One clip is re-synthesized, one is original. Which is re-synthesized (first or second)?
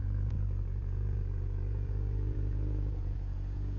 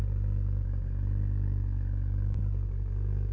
first